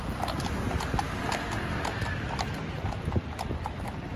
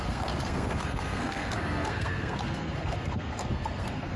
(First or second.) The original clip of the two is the first